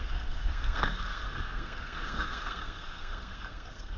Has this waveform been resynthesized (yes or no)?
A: yes